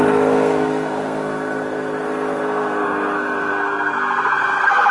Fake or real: fake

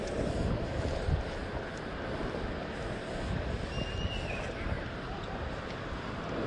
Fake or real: real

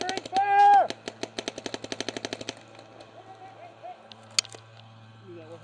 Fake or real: real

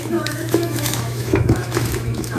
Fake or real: fake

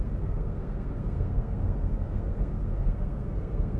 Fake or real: fake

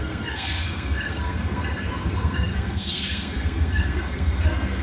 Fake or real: fake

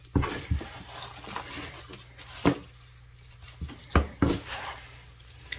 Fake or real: real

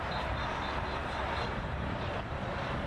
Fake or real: fake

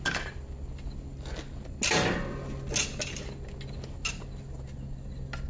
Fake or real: real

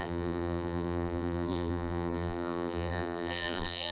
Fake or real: fake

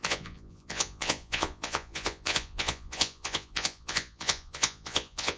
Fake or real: fake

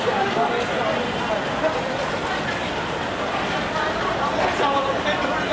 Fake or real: real